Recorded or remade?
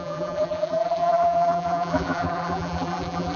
remade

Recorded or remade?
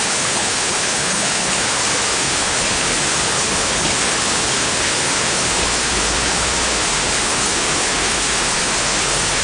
remade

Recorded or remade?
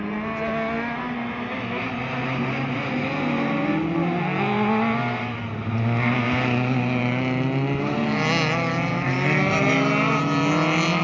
recorded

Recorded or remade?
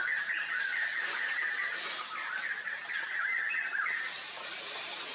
recorded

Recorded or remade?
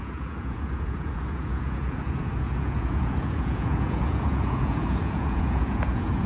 remade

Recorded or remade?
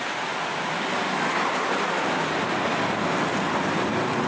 recorded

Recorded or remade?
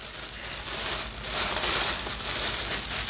recorded